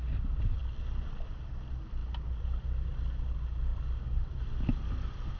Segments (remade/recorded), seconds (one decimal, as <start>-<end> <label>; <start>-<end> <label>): 0.0-5.4 recorded

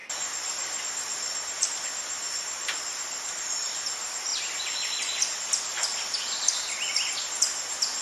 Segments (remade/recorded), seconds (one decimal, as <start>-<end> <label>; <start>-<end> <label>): 0.0-8.0 recorded

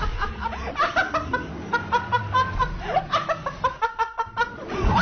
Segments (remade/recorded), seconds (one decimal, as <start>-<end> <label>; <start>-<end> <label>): 0.0-5.0 recorded

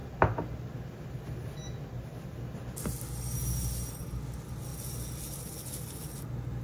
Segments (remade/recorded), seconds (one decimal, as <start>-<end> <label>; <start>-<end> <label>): 0.0-6.6 recorded

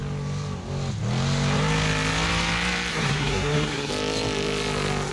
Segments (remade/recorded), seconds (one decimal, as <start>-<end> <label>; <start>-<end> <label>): 0.0-2.9 recorded; 2.9-3.9 remade; 3.9-5.1 recorded

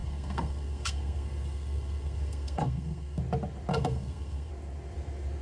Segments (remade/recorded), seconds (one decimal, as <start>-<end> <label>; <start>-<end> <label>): 0.0-3.2 remade; 3.2-3.7 recorded; 3.7-4.5 remade; 4.5-5.4 recorded

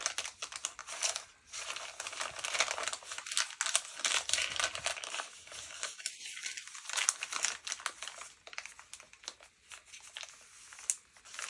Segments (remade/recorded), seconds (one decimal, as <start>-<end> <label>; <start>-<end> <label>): 0.0-4.9 recorded; 4.9-6.1 remade; 6.1-11.5 recorded

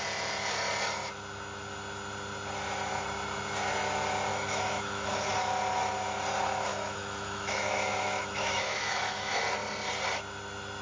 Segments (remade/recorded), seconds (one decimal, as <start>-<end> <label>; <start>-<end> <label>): 0.0-4.3 recorded; 4.3-5.1 remade; 5.1-6.7 recorded; 6.7-9.4 remade; 9.4-10.8 recorded